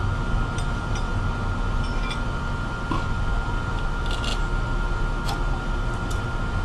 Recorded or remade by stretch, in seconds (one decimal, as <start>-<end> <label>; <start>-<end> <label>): 0.0-6.6 recorded

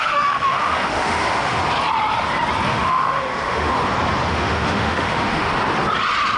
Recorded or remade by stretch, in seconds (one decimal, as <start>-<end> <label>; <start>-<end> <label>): 0.0-1.6 remade; 1.6-2.7 recorded; 2.7-3.7 remade; 3.7-4.3 recorded; 4.3-5.5 remade; 5.5-6.4 recorded

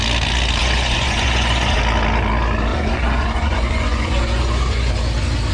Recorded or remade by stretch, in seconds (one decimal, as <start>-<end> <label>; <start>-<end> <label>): 0.0-0.6 recorded; 0.6-1.8 remade; 1.8-2.7 recorded; 2.7-4.9 remade; 4.9-5.5 recorded

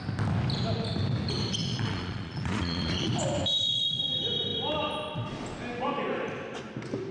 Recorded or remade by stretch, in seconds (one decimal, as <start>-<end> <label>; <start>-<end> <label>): 0.0-1.6 recorded; 1.6-3.1 remade; 3.1-7.1 recorded

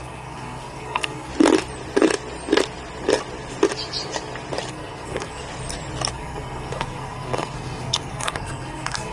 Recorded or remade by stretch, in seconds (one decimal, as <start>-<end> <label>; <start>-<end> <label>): 0.0-1.3 remade; 1.3-4.7 recorded; 4.7-5.4 remade; 5.4-6.1 recorded; 6.1-9.1 remade

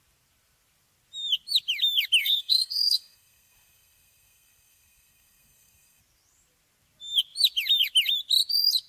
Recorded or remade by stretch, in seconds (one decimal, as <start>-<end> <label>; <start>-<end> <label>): 0.0-2.2 recorded; 2.2-6.0 remade; 6.0-8.9 recorded

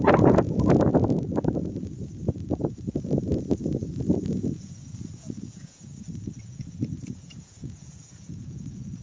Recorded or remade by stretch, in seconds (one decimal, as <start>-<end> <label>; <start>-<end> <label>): 0.0-0.9 remade; 0.9-4.3 recorded; 4.3-5.9 remade; 5.9-6.4 recorded; 6.4-9.0 remade

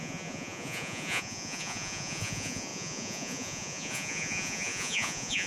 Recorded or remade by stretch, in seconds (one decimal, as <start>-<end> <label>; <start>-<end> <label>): 0.0-5.5 remade